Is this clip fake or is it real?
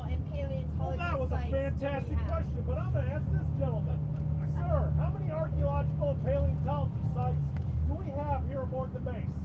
real